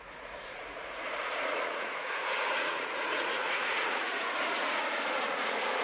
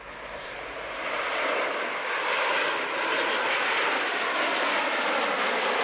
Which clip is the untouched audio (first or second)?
second